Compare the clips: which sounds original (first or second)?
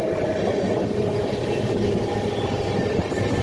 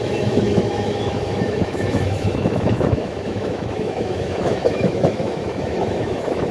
first